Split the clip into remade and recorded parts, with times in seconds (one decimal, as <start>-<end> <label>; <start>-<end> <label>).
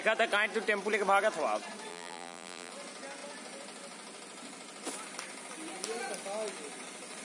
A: 0.0-1.9 recorded; 1.9-2.7 remade; 2.7-7.2 recorded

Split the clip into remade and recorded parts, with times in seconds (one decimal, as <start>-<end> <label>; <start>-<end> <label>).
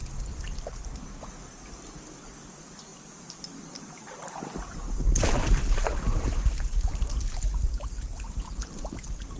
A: 0.0-0.9 remade; 0.9-2.9 recorded; 2.9-4.4 remade; 4.4-5.6 recorded; 5.6-7.5 remade; 7.5-9.4 recorded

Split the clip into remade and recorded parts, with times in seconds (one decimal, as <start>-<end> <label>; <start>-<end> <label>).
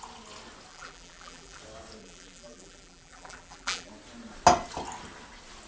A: 0.0-0.7 recorded; 0.7-1.6 remade; 1.6-2.0 recorded; 2.0-3.9 remade; 3.9-5.7 recorded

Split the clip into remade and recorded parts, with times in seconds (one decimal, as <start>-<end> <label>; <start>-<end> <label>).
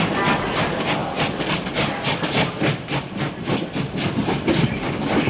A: 0.0-5.3 recorded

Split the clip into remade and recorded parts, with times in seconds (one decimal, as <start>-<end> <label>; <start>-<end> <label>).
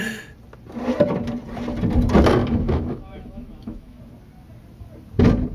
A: 0.0-2.4 recorded; 2.4-4.0 remade; 4.0-5.5 recorded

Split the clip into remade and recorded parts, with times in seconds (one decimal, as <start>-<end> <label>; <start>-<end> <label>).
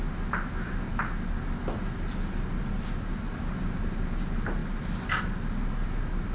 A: 0.0-6.3 recorded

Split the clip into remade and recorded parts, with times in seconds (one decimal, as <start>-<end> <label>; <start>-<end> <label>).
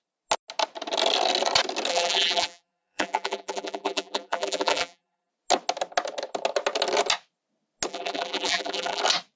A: 0.0-1.9 recorded; 1.9-5.3 remade; 5.3-7.9 recorded; 7.9-9.0 remade; 9.0-9.4 recorded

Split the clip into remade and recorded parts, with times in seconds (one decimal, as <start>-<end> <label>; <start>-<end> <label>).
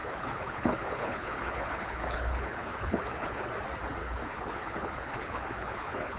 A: 0.0-3.5 remade; 3.5-4.0 recorded; 4.0-6.2 remade